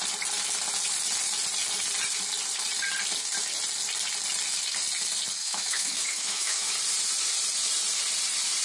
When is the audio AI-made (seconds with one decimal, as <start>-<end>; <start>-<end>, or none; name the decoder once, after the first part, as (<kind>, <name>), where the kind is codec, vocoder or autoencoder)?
5.4-6.7 (autoencoder, DAC-VAE)